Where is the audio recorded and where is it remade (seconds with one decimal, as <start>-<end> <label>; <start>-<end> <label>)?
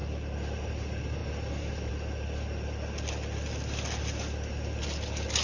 0.0-5.4 recorded